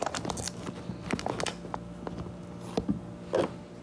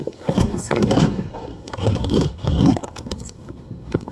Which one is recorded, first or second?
first